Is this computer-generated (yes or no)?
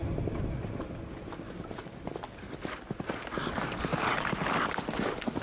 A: no